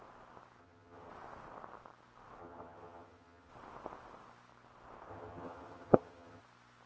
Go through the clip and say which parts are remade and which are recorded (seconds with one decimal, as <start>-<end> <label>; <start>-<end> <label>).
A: 0.0-0.6 recorded; 0.6-1.1 remade; 1.1-2.4 recorded; 2.4-3.5 remade; 3.5-5.1 recorded; 5.1-6.4 remade; 6.4-6.9 recorded